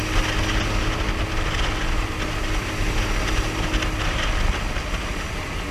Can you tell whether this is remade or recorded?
recorded